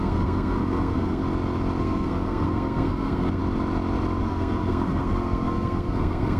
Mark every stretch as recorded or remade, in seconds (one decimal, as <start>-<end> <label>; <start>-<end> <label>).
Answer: 0.0-1.2 remade; 1.2-1.8 recorded; 1.8-3.4 remade; 3.4-4.2 recorded; 4.2-6.4 remade